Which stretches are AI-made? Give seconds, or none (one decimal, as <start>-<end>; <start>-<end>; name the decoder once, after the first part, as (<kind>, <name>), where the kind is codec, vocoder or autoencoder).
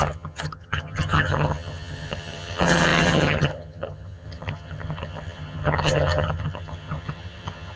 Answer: 0.0-7.8 (vocoder, HiFi-GAN)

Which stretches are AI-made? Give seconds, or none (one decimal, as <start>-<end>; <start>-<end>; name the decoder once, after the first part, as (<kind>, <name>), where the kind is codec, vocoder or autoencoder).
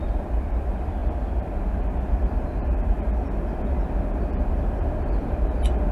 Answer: 0.0-1.0 (vocoder, BigVGAN v2); 4.5-5.9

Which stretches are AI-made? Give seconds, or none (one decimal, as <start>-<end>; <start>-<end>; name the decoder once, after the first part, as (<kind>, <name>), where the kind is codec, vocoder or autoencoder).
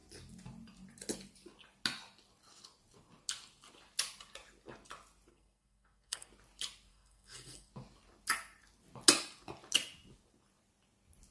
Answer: 5.3-6.3 (codec, SNAC); 6.9-7.7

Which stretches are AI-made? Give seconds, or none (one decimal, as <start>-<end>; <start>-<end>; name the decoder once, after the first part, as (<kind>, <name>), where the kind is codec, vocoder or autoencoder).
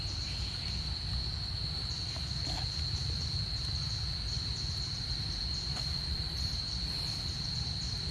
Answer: 5.4-8.1 (vocoder, BigVGAN v2)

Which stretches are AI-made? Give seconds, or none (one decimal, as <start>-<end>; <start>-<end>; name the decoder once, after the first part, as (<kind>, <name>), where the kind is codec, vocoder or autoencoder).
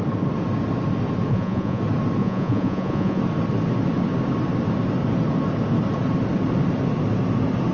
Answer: 1.3-1.8 (vocoder, Vocos); 2.2-3.2